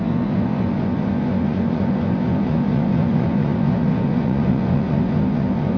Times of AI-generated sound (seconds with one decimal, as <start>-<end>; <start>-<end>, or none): 0.0-5.8